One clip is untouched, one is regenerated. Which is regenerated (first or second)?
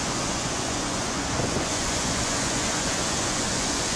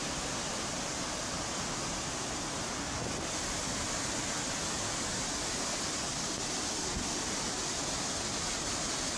first